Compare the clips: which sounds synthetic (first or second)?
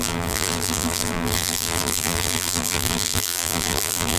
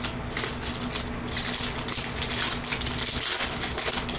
first